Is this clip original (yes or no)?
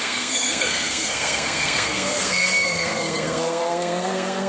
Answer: no